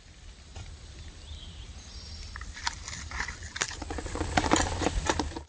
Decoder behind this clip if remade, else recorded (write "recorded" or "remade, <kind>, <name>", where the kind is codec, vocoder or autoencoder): recorded